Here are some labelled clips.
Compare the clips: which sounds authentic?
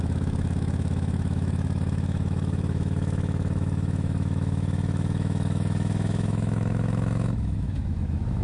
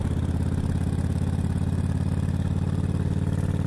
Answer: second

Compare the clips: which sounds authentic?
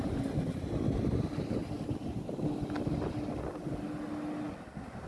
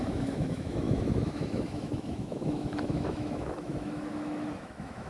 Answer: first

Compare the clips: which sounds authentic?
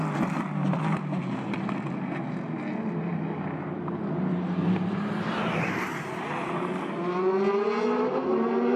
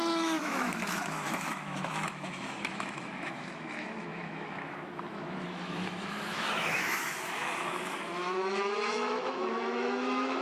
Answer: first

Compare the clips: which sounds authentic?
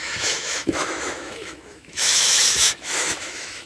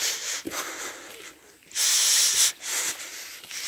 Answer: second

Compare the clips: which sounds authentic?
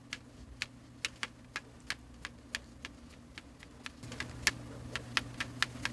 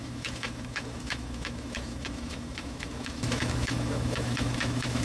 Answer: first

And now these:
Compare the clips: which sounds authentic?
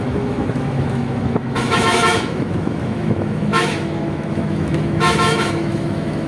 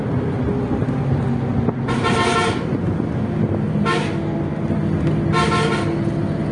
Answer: second